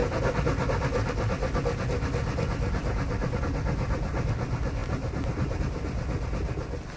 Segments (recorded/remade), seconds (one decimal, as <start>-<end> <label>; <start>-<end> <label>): 0.0-4.8 recorded; 4.8-5.6 remade; 5.6-7.0 recorded